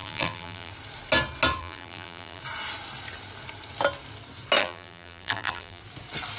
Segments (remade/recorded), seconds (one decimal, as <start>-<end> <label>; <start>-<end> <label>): 0.0-0.7 remade; 0.7-1.6 recorded; 1.6-2.4 remade; 2.4-4.6 recorded; 4.6-5.8 remade; 5.8-6.4 recorded